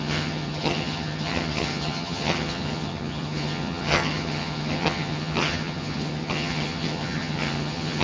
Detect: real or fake fake